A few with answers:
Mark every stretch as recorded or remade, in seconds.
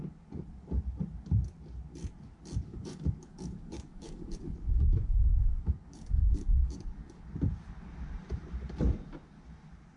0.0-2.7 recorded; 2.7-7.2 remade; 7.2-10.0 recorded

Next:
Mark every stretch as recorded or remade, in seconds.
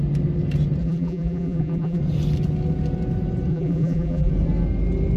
0.0-0.8 recorded; 0.8-2.0 remade; 2.0-3.5 recorded; 3.5-4.3 remade; 4.3-5.2 recorded